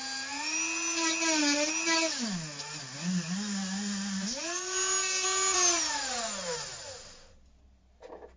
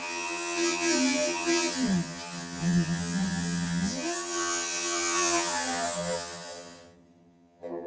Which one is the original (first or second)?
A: first